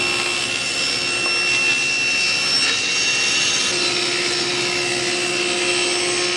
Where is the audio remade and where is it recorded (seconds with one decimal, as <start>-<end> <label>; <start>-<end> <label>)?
0.0-6.4 recorded